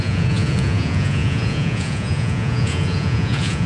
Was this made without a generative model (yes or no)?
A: no